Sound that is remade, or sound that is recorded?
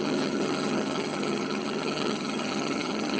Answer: remade